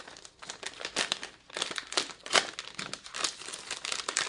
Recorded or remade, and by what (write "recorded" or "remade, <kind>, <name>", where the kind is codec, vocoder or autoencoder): recorded